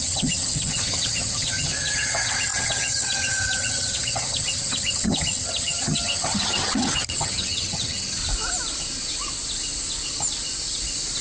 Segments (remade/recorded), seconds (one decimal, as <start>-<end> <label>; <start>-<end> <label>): 0.0-8.2 remade; 8.2-11.2 recorded